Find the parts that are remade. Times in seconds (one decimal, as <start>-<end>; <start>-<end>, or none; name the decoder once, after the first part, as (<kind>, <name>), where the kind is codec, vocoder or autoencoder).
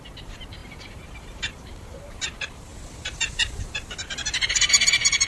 0.0-2.7 (vocoder, BigVGAN v2); 3.3-5.3